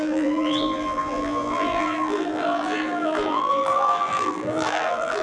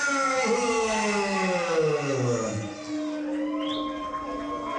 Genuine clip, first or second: second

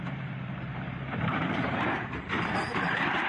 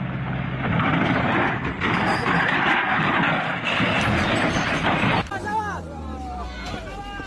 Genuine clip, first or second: second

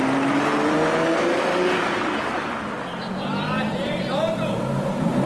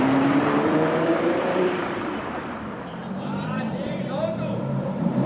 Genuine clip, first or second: first